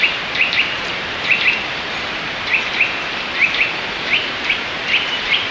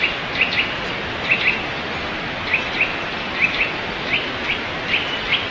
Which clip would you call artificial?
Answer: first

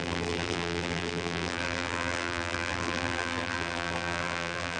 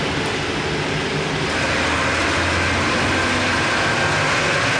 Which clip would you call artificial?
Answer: first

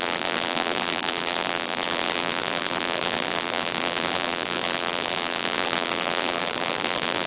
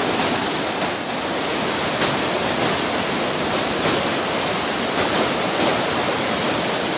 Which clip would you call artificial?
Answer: first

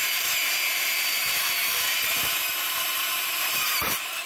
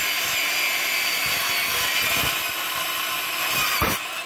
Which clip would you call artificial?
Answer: first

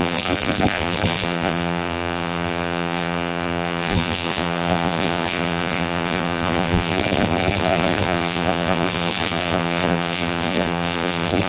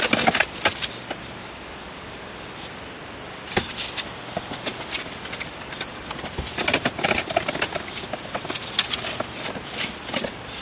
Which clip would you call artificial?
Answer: first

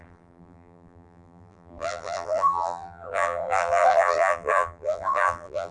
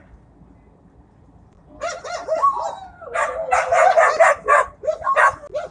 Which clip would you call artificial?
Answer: first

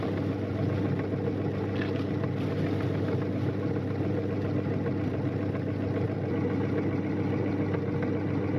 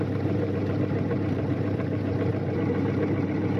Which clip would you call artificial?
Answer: second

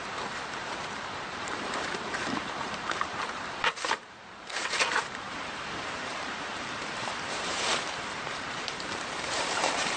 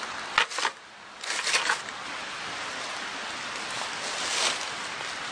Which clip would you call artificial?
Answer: first